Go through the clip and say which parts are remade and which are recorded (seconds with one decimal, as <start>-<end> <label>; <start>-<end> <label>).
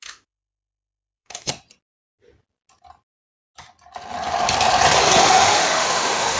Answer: 0.0-1.5 remade; 1.5-5.2 recorded; 5.2-6.4 remade